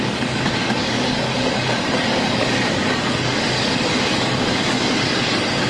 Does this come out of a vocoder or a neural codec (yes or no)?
yes